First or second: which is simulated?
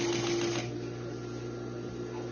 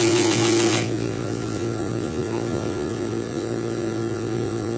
second